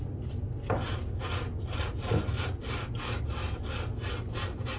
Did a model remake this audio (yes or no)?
no